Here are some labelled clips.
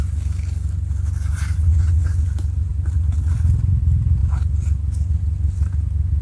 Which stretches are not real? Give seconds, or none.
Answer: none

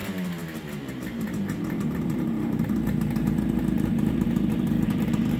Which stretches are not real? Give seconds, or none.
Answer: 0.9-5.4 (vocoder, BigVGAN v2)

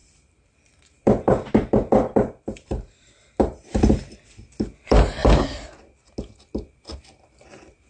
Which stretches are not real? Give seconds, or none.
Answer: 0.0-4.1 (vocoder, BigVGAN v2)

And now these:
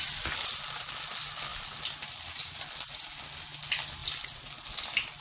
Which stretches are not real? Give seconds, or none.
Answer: none

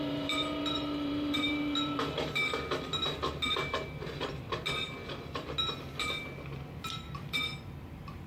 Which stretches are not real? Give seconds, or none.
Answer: 0.0-2.4 (vocoder, BigVGAN v2); 6.8-8.3

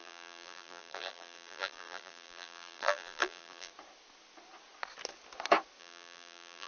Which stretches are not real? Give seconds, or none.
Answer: 0.0-3.7 (vocoder, BigVGAN v2); 5.8-6.7